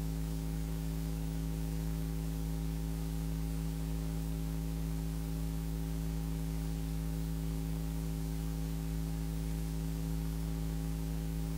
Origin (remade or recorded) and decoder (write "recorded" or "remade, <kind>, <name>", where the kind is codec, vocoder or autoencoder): remade, codec, DAC